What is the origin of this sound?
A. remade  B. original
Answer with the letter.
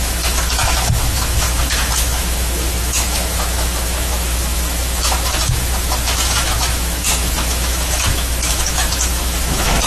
A